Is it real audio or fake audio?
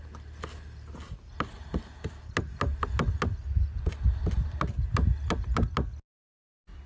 real